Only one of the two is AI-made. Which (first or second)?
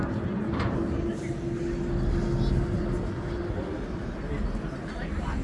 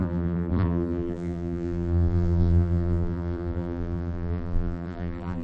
second